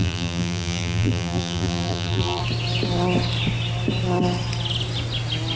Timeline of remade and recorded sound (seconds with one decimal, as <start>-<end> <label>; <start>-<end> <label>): 0.0-2.4 remade; 2.4-5.6 recorded